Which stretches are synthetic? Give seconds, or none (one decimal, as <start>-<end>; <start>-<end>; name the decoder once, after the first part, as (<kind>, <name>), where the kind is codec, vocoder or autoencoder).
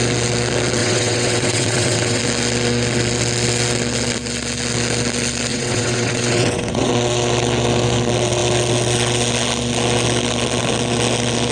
0.8-2.2 (vocoder, WaveNeXt); 5.5-6.9